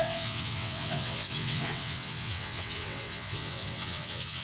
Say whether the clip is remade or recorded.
remade